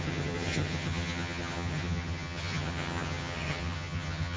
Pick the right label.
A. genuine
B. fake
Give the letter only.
B